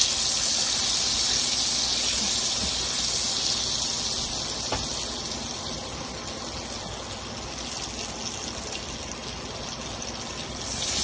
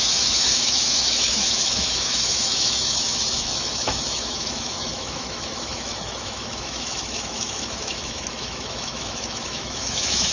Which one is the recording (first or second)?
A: first